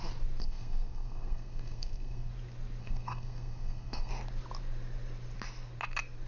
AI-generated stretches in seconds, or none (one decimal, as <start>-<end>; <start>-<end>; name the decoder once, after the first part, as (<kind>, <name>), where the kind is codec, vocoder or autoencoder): 0.4-2.3 (codec, SNAC); 2.8-4.1

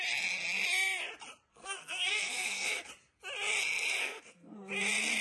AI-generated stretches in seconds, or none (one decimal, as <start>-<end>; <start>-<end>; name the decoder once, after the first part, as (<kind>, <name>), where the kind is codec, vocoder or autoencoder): 1.5-2.9 (codec, SNAC); 4.0-4.7

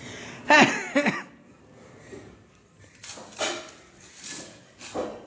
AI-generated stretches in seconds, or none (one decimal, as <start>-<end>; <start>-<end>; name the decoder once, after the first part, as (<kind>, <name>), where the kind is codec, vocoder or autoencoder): none